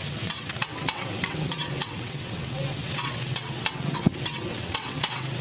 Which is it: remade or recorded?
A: remade